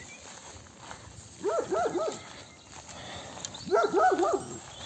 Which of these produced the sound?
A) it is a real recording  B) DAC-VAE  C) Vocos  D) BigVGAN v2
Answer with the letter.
A